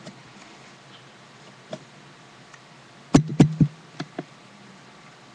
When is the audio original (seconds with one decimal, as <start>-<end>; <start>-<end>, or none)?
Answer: 0.0-5.3